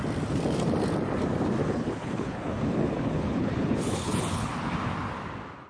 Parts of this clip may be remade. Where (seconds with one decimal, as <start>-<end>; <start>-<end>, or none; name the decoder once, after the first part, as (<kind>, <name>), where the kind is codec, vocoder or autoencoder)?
1.6-4.5 (codec, HILCodec)